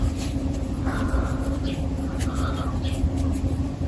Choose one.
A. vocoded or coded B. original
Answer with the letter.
A